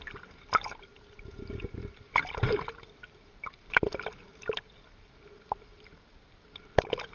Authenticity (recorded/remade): recorded